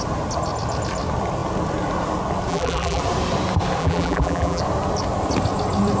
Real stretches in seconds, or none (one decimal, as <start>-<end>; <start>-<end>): 0.0-2.5; 3.0-3.8; 4.6-6.0